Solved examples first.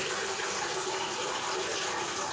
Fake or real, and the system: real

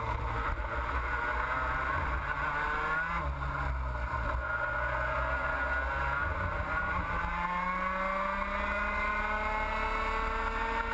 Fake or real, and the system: real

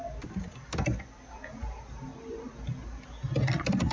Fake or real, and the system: real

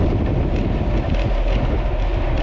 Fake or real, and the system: real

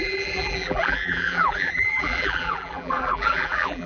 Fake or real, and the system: fake, vocoder, BigVGAN v2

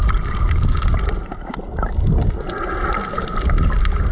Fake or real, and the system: real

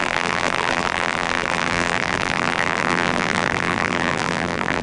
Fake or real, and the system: fake, vocoder, BigVGAN v2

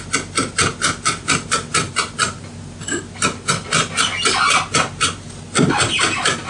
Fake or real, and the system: real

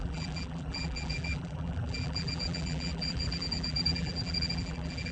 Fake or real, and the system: fake, vocoder, BigVGAN v2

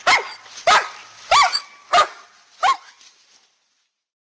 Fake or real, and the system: real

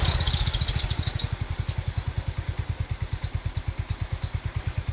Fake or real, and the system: real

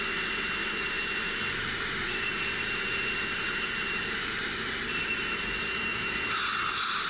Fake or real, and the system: fake, vocoder, BigVGAN v2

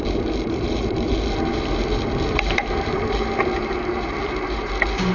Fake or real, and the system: fake, vocoder, BigVGAN v2